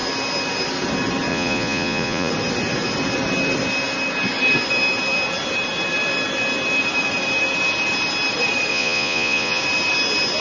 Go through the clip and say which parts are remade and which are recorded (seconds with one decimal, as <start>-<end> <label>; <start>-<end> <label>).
0.0-1.3 recorded; 1.3-2.3 remade; 2.3-8.7 recorded; 8.7-9.6 remade; 9.6-10.4 recorded